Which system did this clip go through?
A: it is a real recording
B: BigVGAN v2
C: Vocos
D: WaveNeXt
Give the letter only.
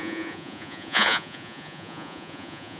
C